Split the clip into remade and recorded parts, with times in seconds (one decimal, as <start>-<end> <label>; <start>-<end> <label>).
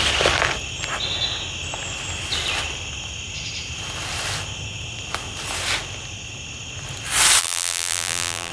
0.0-7.4 recorded; 7.4-8.5 remade